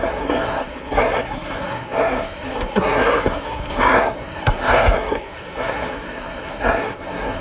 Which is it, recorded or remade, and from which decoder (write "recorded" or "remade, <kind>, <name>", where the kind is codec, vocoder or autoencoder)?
remade, codec, SNAC